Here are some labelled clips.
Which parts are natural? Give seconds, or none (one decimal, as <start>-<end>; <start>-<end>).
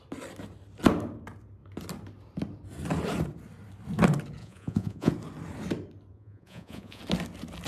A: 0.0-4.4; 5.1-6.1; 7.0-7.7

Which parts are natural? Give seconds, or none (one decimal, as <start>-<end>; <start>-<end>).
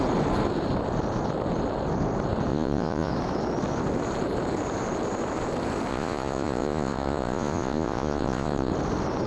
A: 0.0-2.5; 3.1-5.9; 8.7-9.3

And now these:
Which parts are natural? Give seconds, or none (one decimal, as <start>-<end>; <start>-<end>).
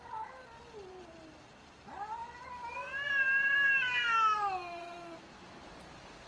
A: 0.0-6.3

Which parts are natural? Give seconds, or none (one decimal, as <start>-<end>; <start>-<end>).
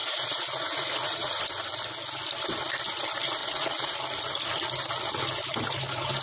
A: 1.4-3.4; 4.0-6.2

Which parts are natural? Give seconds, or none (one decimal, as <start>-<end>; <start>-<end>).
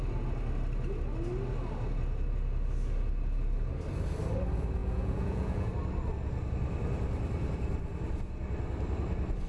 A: 0.0-4.8; 5.7-9.5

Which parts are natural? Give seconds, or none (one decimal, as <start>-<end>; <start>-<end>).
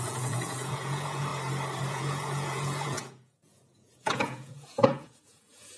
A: 1.3-1.9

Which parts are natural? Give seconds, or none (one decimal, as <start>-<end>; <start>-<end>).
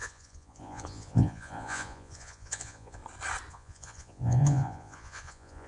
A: 3.0-3.5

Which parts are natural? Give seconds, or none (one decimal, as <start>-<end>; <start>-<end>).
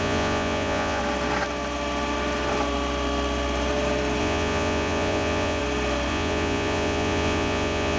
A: 1.0-4.2; 5.6-6.1